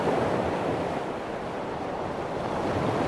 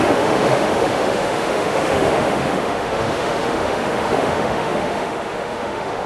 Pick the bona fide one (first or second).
first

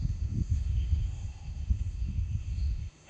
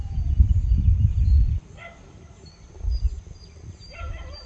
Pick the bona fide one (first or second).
second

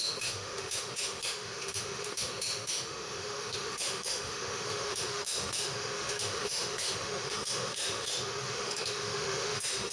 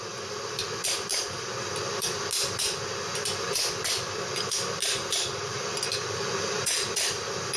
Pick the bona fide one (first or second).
second